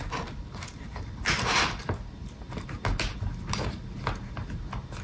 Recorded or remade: recorded